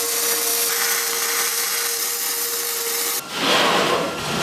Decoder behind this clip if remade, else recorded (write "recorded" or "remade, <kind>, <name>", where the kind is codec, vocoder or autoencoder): recorded